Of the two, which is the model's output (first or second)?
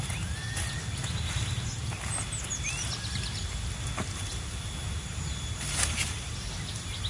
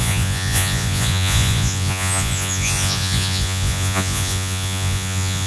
second